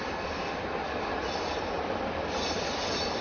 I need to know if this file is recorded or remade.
recorded